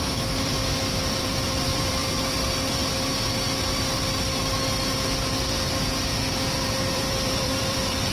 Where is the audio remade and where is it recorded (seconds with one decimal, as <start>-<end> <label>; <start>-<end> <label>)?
0.0-2.8 remade; 2.8-6.9 recorded; 6.9-8.1 remade